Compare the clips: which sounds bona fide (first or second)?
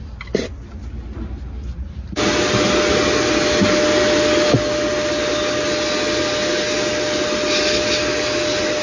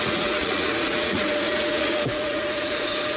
first